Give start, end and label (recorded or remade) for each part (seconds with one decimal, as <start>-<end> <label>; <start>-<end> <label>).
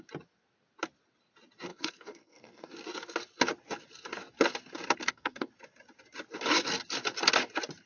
0.0-1.7 recorded; 1.7-2.7 remade; 2.7-5.0 recorded; 5.0-5.5 remade; 5.5-7.9 recorded